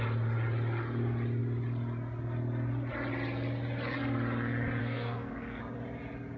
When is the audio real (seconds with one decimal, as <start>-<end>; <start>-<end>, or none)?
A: 0.0-4.8; 5.6-6.4